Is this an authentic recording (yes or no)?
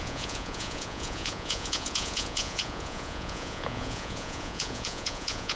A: no